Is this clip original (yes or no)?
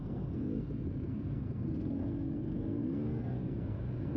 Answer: no